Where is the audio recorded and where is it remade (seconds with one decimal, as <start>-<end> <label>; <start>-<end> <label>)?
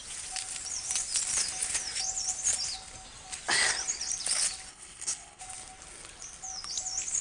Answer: 0.0-4.7 recorded; 4.7-5.4 remade; 5.4-7.2 recorded